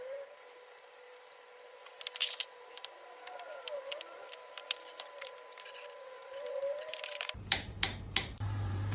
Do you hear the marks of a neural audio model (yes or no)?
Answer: yes